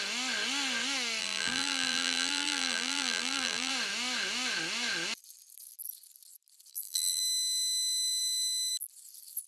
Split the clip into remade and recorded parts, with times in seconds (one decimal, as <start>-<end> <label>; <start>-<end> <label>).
0.0-1.2 recorded; 1.2-3.7 remade; 3.7-6.7 recorded; 6.7-7.2 remade; 7.2-9.5 recorded